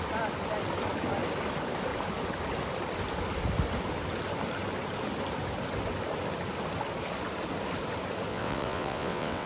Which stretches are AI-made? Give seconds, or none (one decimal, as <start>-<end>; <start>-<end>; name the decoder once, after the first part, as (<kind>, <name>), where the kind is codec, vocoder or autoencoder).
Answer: 8.3-9.5 (vocoder, WaveNeXt)